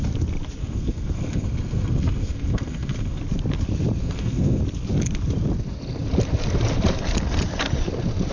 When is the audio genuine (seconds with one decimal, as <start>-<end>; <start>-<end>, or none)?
0.0-0.6; 3.2-4.0; 4.6-8.3